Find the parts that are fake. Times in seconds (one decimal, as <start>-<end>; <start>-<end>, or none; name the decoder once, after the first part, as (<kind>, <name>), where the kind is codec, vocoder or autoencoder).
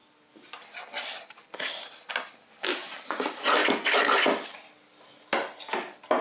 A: none